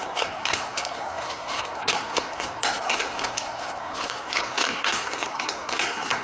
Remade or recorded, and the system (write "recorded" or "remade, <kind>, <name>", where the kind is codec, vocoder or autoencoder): remade, codec, SNAC